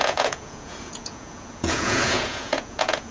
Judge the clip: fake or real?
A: fake